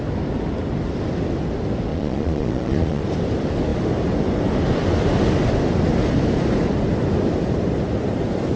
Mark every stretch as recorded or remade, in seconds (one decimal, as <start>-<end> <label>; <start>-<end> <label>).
0.0-1.9 recorded; 1.9-3.0 remade; 3.0-8.6 recorded